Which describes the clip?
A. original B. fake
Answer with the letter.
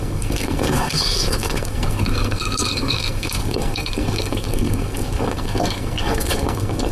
B